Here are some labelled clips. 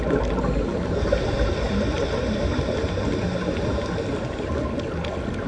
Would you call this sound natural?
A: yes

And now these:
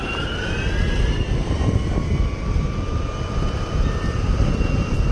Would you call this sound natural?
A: yes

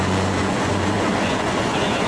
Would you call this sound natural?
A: no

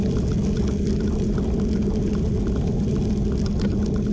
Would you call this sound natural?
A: yes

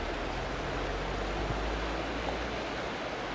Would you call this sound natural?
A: yes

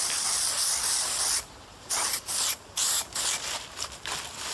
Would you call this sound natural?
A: yes